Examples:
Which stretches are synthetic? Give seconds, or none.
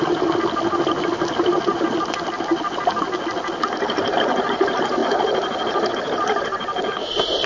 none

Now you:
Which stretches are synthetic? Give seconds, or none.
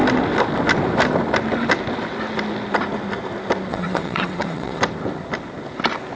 3.7-4.8 (vocoder, WaveNeXt)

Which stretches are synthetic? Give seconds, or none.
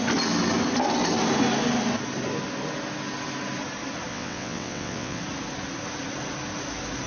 4.1-5.2 (vocoder, WaveNeXt)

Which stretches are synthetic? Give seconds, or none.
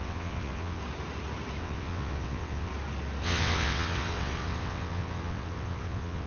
0.0-0.8 (vocoder, WaveNeXt); 1.6-2.7; 3.2-6.3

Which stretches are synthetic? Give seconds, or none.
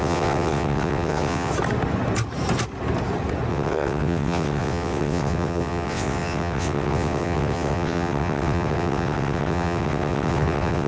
0.0-1.5 (vocoder, WaveNeXt); 3.5-10.9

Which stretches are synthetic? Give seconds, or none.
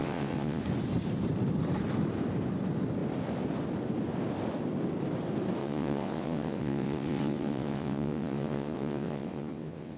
0.0-0.6 (vocoder, WaveNeXt); 5.6-10.0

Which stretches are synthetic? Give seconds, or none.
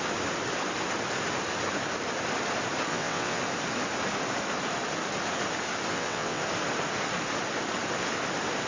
2.9-3.4 (vocoder, WaveNeXt); 5.9-6.4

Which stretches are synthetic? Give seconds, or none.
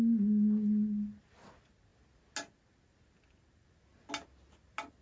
none